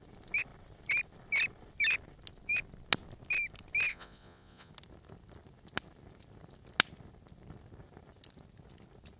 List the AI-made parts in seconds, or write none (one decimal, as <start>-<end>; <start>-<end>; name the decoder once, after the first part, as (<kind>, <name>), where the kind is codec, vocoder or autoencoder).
3.9-4.7 (vocoder, Vocos)